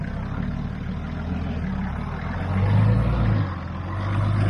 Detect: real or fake real